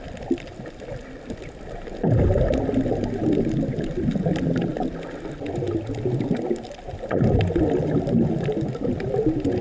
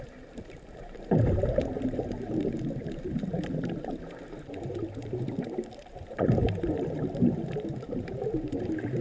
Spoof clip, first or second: second